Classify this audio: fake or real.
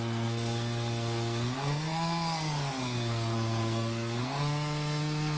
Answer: fake